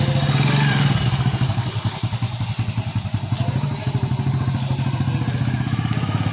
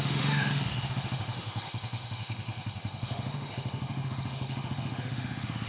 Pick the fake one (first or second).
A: second